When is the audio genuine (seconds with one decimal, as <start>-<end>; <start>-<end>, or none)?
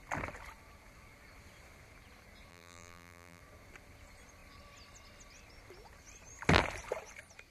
0.0-2.5; 3.4-7.5